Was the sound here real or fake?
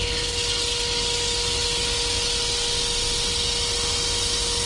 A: real